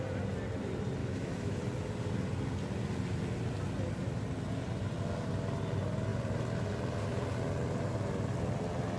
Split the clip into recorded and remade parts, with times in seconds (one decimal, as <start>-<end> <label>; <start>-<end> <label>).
0.0-1.0 recorded; 1.0-1.6 remade; 1.6-9.0 recorded